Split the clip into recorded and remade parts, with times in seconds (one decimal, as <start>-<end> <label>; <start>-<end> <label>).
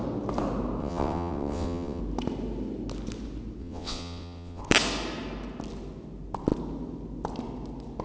0.0-0.8 recorded; 0.8-2.0 remade; 2.0-3.6 recorded; 3.6-4.6 remade; 4.6-8.0 recorded